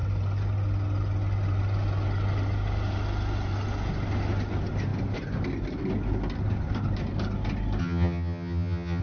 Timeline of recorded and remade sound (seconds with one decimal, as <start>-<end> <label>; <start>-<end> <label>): 0.0-7.8 recorded; 7.8-9.0 remade